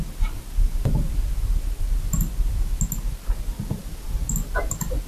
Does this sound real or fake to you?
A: real